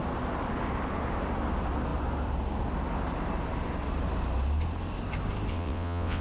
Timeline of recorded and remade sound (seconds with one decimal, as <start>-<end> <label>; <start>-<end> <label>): 0.0-5.5 recorded; 5.5-6.2 remade